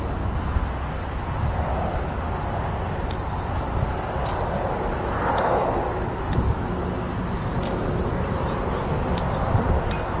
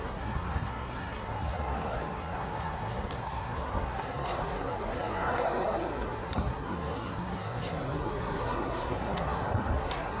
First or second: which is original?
first